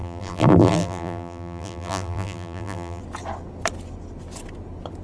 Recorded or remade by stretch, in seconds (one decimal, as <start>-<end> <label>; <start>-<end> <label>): 0.0-3.0 remade; 3.0-5.0 recorded